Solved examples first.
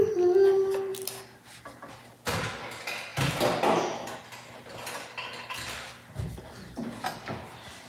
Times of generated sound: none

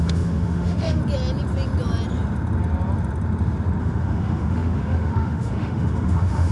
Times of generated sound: 0.0-1.0; 3.8-6.5

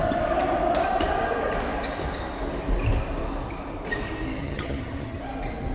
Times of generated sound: 4.4-5.2

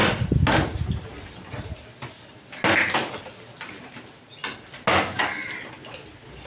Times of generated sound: none

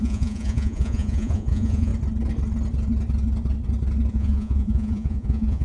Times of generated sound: 0.0-1.9; 4.1-5.6

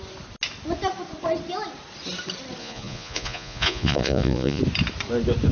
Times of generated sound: 2.6-4.6

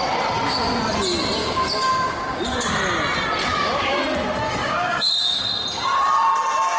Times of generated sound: 1.4-2.4; 3.4-4.0; 4.6-5.4

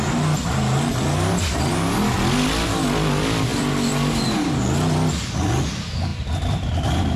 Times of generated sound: 3.5-4.1